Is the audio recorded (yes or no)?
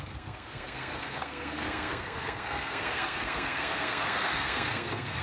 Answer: no